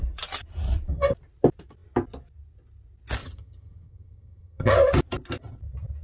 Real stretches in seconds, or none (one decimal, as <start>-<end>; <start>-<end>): 0.0-3.2; 4.7-6.0